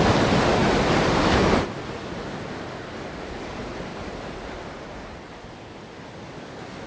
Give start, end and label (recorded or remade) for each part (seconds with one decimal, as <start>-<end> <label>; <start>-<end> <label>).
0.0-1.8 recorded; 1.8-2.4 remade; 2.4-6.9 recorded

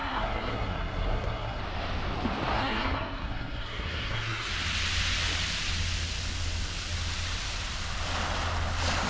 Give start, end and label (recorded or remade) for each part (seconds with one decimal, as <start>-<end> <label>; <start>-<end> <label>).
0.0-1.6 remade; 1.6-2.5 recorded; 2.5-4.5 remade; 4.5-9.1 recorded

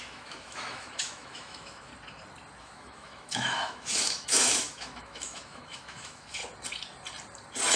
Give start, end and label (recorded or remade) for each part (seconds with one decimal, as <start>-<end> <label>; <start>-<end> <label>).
0.0-1.9 remade; 1.9-2.6 recorded; 2.6-6.4 remade; 6.4-7.8 recorded

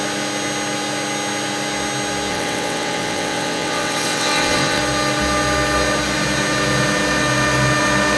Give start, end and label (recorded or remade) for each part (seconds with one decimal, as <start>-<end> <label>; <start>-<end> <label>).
0.0-2.3 recorded; 2.3-4.8 remade; 4.8-8.2 recorded